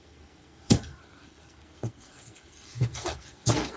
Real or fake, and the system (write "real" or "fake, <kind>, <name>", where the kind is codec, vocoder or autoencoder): fake, codec, SNAC